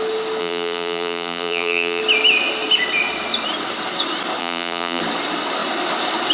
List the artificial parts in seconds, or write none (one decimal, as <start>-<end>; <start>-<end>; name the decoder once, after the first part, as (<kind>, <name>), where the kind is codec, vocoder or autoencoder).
0.4-2.0 (vocoder, BigVGAN v2); 4.4-5.0